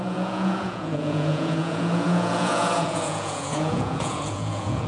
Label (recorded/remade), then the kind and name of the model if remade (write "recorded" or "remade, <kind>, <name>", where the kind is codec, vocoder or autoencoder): remade, vocoder, Vocos